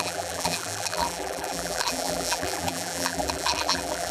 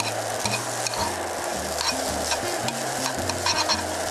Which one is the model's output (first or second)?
first